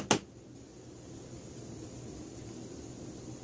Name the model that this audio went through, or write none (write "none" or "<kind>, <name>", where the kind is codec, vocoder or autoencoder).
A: none